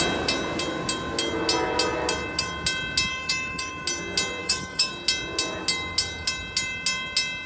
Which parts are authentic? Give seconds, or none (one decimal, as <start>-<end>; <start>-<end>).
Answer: 0.0-3.1; 3.7-4.4; 4.9-7.5